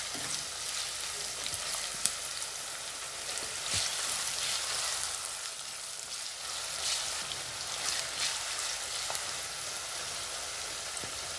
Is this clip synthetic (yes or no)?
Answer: no